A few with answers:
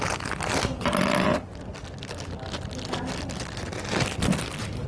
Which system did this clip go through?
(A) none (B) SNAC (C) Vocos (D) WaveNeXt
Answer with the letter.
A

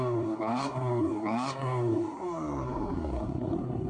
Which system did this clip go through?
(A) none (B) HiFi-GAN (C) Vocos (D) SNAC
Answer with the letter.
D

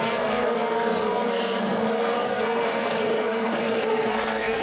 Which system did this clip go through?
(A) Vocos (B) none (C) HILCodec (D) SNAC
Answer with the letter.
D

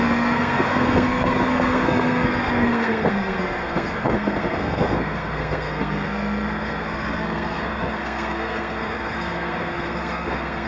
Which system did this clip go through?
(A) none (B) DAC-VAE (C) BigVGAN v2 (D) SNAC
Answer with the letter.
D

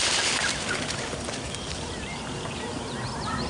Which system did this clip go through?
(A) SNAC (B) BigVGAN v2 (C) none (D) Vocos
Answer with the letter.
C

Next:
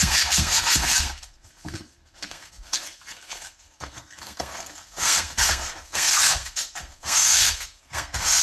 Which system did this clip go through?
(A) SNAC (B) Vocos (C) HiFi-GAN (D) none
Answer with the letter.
A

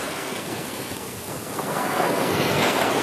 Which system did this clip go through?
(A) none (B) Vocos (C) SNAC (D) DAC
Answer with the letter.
C